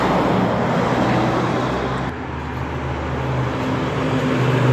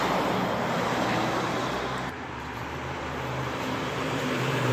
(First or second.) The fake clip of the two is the second